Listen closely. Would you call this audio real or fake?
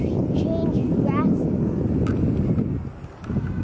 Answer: real